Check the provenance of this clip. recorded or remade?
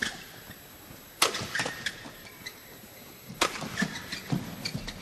recorded